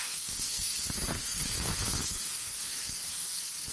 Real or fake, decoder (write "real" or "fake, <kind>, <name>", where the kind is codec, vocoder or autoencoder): fake, codec, SNAC